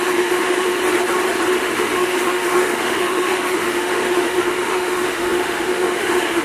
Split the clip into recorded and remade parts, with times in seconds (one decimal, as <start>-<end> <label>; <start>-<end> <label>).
0.0-0.8 remade; 0.8-1.6 recorded; 1.6-6.4 remade